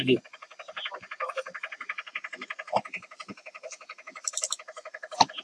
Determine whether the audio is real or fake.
real